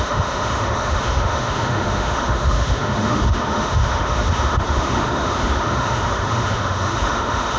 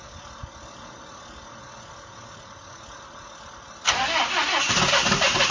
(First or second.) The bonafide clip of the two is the second